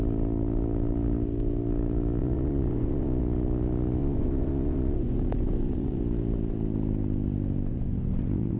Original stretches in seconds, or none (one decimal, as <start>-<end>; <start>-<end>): 0.0-2.2; 3.2-4.0; 6.0-7.7